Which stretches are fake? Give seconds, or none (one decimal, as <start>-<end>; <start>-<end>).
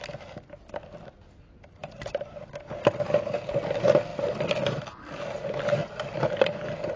1.8-2.5; 4.1-4.9